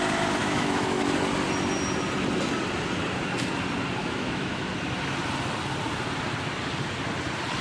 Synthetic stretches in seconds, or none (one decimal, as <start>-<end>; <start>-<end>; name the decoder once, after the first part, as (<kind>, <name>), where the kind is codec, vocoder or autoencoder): 0.4-1.0 (autoencoder, DAC-VAE); 4.0-4.7